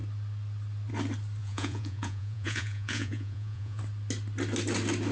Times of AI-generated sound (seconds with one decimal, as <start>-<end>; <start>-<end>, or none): 1.4-3.8